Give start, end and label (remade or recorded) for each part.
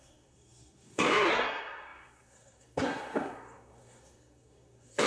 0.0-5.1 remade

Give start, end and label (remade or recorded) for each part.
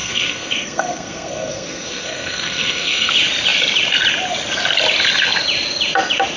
0.0-3.1 remade; 3.1-6.4 recorded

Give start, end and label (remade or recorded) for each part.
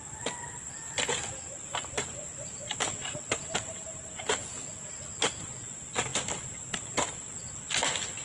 0.0-8.2 recorded